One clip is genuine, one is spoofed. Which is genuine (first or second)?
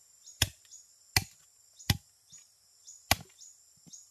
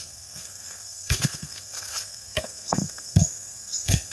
first